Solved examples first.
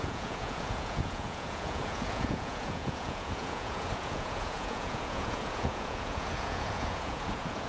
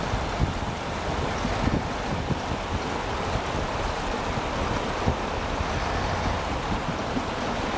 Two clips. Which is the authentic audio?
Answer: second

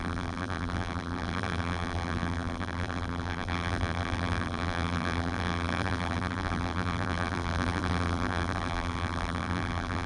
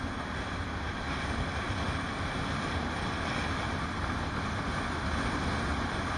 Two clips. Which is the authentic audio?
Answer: second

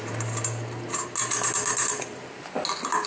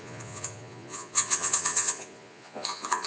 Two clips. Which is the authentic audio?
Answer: first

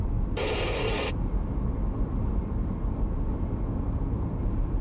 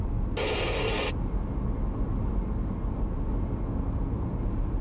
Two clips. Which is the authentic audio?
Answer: second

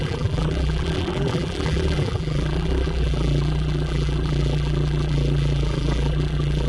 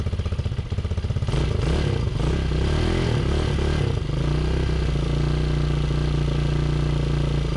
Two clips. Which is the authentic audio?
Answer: second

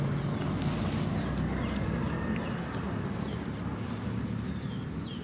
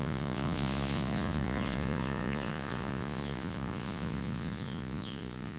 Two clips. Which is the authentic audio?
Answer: first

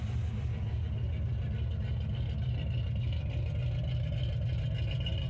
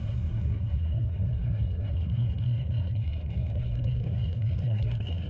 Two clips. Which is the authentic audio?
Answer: first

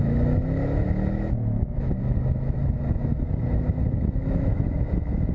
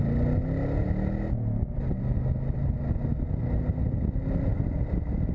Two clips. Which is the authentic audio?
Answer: second